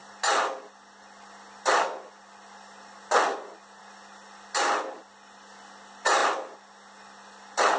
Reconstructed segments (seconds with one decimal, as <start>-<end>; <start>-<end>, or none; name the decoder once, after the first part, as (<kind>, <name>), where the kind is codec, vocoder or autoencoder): none